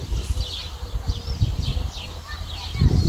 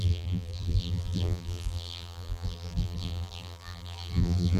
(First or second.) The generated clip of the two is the second